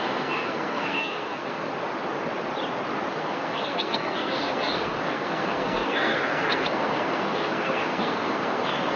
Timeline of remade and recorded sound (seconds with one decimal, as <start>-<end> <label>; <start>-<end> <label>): 0.0-1.7 remade; 1.7-3.1 recorded; 3.1-9.0 remade